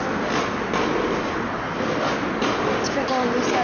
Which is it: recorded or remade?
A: recorded